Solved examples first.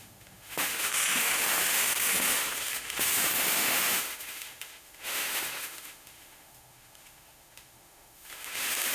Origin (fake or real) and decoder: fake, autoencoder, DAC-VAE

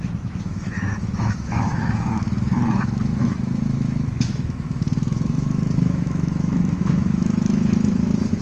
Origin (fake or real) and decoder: fake, autoencoder, DAC-VAE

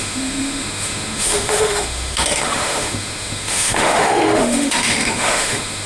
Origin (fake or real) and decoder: fake, autoencoder, DAC-VAE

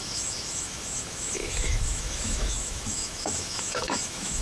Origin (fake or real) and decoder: fake, autoencoder, DAC-VAE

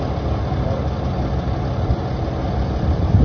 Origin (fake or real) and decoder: real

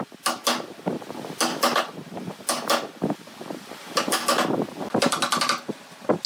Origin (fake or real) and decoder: real